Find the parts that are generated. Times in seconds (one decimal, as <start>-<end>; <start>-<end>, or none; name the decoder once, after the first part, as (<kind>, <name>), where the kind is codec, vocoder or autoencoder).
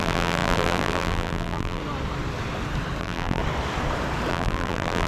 0.0-1.8 (vocoder, BigVGAN v2); 3.0-3.4; 4.3-5.1